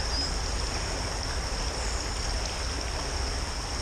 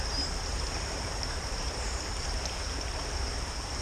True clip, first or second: first